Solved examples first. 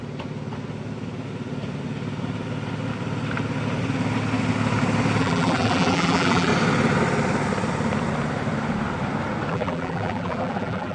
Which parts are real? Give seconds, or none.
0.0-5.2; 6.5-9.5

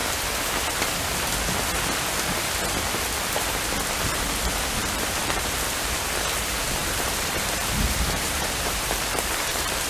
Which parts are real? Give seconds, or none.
0.0-4.8; 6.0-6.8

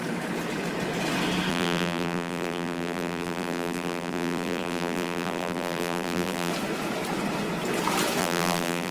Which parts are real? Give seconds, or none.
0.0-1.5; 6.5-8.2

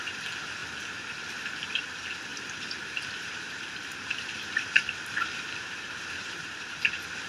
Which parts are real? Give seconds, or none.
0.0-2.3; 6.7-7.3

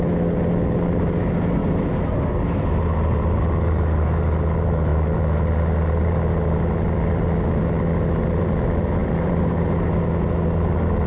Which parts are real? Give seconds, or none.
0.0-1.6; 2.1-9.0; 9.9-11.1

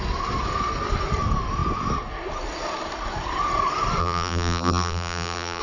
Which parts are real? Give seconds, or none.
0.0-4.0

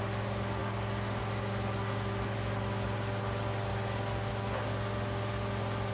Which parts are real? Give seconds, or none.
0.0-5.9

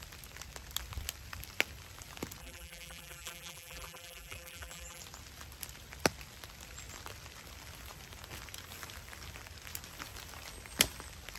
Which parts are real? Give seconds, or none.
0.0-2.4; 5.0-11.4